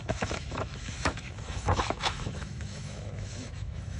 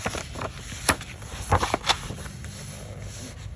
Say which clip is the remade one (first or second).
first